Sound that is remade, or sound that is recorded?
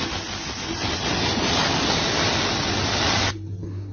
recorded